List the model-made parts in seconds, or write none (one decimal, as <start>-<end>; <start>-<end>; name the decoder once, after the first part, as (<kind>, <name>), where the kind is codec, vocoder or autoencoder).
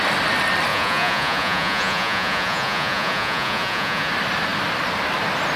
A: 0.7-4.1 (vocoder, Vocos)